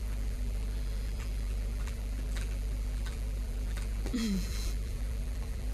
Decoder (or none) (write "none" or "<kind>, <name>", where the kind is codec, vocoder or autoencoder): vocoder, BigVGAN v2